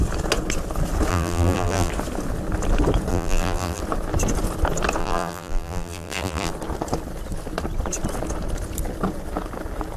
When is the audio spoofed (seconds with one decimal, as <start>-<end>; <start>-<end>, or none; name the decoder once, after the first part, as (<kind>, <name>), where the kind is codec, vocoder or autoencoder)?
1.1-1.9 (vocoder, BigVGAN v2); 3.1-3.8; 5.0-6.5